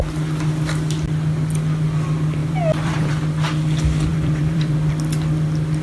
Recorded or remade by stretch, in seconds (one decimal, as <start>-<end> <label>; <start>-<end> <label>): 0.0-2.4 recorded; 2.4-3.1 remade; 3.1-4.1 recorded; 4.1-4.9 remade; 4.9-5.8 recorded